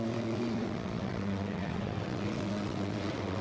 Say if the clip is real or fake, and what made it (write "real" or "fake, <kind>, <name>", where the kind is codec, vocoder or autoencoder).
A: fake, vocoder, WaveNeXt